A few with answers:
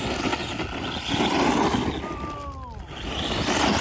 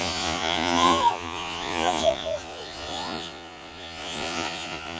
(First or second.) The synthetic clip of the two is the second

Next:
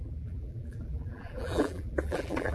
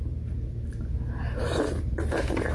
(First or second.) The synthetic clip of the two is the first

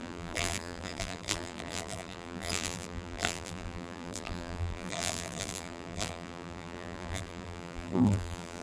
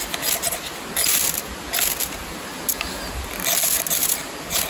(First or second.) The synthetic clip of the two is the first